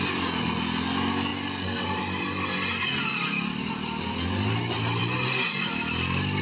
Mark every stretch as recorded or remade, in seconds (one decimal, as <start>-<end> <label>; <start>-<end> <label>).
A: 0.0-6.4 recorded